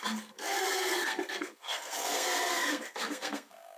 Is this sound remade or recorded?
remade